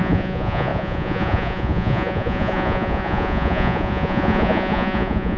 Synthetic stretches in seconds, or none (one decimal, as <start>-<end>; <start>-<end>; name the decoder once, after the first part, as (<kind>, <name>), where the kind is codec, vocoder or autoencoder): 0.0-5.4 (vocoder, Vocos)